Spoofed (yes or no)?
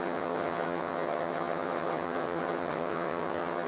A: yes